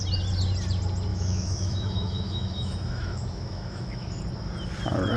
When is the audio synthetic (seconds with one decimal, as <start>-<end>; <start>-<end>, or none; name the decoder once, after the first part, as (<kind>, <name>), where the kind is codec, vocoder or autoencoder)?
1.1-4.2 (autoencoder, DAC-VAE)

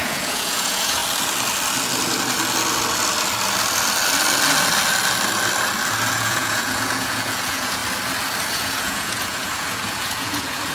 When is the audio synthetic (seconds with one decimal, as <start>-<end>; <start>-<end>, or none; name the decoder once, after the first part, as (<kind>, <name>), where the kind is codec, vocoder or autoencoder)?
0.0-1.0 (vocoder, Vocos); 6.1-7.8; 8.5-10.7